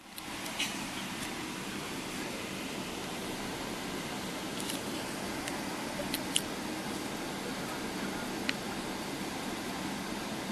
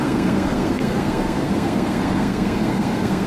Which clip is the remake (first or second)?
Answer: second